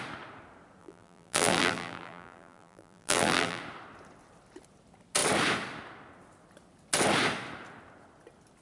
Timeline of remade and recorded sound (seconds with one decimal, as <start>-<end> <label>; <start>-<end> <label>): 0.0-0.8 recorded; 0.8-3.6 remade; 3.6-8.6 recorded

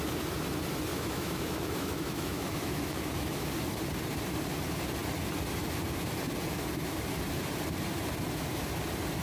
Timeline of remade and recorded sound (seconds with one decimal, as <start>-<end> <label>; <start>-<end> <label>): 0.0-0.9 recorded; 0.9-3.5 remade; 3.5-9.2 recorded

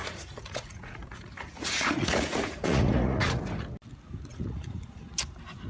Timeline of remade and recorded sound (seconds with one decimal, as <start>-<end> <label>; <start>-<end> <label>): 0.0-3.4 remade; 3.4-4.3 recorded; 4.3-5.0 remade; 5.0-5.7 recorded

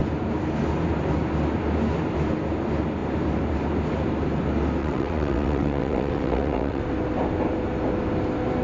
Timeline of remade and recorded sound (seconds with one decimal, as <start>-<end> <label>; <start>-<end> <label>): 0.0-4.8 recorded; 4.8-6.8 remade; 6.8-8.6 recorded

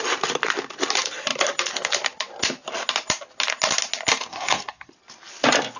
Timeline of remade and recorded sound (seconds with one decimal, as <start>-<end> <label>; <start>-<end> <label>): 0.0-4.3 recorded; 4.3-4.9 remade; 4.9-5.8 recorded

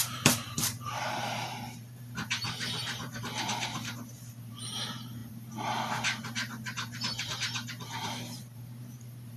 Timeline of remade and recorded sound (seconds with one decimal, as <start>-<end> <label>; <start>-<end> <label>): 0.0-9.4 remade